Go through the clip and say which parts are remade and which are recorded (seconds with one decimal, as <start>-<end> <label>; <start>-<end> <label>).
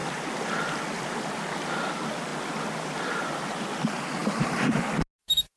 0.0-4.2 recorded; 4.2-4.8 remade; 4.8-5.6 recorded